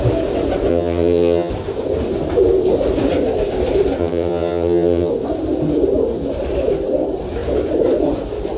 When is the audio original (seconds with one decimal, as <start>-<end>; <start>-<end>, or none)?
0.0-0.7; 1.5-4.0; 5.1-8.6